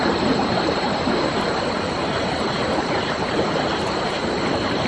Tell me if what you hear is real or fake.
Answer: fake